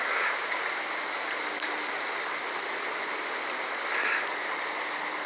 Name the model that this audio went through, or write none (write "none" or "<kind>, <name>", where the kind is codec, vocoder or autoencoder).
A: none